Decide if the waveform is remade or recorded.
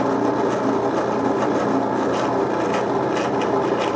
recorded